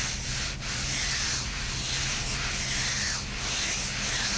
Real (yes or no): yes